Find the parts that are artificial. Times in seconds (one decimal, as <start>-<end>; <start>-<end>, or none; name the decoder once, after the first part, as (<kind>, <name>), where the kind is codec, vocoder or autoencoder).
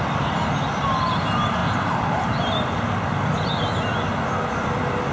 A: none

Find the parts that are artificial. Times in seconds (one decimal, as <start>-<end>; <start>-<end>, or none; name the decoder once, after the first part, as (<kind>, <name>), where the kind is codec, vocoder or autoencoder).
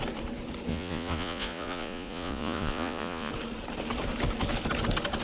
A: 0.7-3.3 (vocoder, Vocos)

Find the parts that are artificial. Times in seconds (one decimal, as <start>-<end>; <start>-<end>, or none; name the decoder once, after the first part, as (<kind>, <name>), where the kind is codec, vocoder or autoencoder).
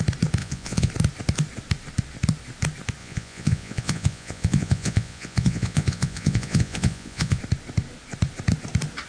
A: 0.4-0.9 (vocoder, Vocos); 3.0-7.4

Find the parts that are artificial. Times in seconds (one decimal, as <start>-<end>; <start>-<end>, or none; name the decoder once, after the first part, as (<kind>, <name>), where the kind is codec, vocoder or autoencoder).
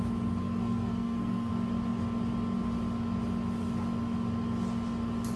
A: 0.4-1.5 (codec, SNAC)